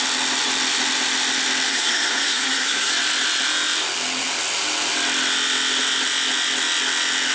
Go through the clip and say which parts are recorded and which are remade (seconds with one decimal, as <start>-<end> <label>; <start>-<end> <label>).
0.0-1.7 recorded; 1.7-2.9 remade; 2.9-7.3 recorded